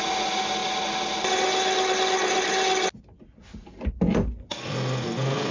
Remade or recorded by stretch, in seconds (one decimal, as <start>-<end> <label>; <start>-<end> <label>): 0.0-5.5 recorded